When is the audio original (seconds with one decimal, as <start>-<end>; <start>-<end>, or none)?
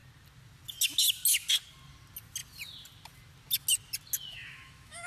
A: 0.0-4.3